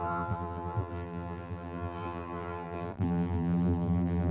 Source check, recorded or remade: remade